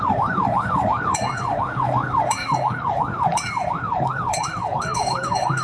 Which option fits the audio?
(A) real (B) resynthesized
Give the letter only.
B